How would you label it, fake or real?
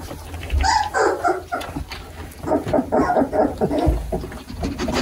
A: real